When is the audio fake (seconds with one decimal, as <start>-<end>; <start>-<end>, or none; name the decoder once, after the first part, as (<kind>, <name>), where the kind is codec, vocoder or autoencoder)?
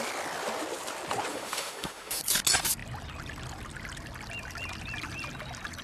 1.3-2.2 (autoencoder, DAC-VAE)